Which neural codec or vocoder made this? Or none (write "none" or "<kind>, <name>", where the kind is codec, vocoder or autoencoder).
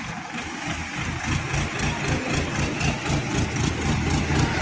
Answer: none